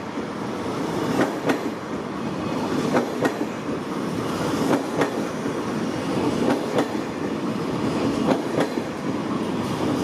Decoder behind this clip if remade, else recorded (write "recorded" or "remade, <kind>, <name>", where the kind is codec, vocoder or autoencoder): recorded